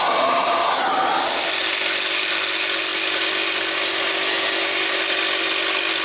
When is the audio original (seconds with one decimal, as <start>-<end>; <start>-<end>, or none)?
0.0-6.0